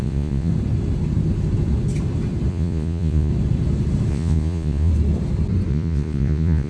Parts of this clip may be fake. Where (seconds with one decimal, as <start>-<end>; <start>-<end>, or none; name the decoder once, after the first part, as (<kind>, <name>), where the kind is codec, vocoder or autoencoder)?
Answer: 0.0-0.5 (vocoder, Vocos); 2.5-3.3; 4.1-4.9; 5.7-6.7